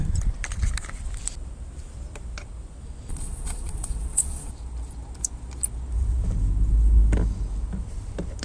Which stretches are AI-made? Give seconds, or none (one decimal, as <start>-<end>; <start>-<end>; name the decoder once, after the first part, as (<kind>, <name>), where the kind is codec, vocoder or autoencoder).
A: 3.1-4.5 (vocoder, Vocos)